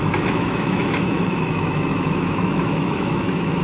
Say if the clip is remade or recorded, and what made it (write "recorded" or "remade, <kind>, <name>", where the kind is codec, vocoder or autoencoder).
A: remade, autoencoder, DAC-VAE